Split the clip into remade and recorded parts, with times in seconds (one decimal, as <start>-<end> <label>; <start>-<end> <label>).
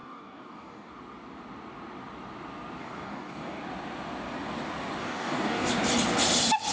0.0-0.9 remade; 0.9-2.8 recorded; 2.8-3.6 remade; 3.6-5.0 recorded; 5.0-5.7 remade; 5.7-6.7 recorded